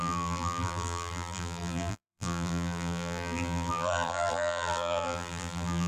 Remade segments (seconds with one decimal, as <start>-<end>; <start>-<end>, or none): 0.0-5.9